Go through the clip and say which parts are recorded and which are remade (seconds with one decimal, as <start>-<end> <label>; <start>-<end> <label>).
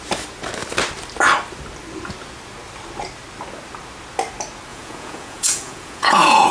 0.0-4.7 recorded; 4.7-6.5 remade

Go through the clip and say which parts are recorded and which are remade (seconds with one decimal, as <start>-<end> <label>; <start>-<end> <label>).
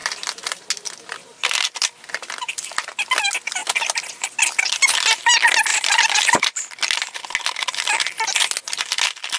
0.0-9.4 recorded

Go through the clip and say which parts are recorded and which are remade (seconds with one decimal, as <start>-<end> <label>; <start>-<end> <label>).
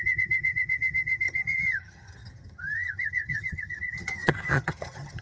0.0-5.2 remade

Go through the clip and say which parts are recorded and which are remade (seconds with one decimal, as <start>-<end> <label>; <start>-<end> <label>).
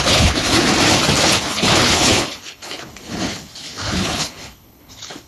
0.0-0.5 remade; 0.5-1.4 recorded; 1.4-5.3 remade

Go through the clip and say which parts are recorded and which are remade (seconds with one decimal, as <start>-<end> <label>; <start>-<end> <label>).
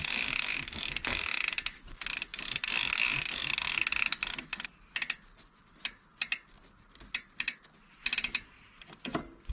0.0-9.5 recorded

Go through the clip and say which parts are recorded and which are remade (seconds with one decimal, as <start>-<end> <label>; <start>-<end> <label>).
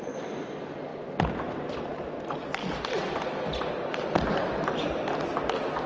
0.0-5.9 recorded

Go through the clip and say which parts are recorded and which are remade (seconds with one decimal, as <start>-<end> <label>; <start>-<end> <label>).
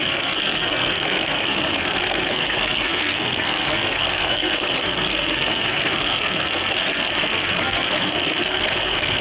0.0-9.2 remade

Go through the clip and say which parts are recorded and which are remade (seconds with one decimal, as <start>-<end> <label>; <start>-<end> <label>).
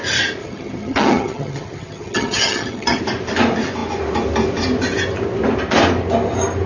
0.0-0.4 recorded; 0.4-3.0 remade; 3.0-6.7 recorded